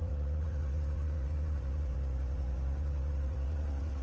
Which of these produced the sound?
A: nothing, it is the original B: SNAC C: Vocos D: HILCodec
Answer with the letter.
C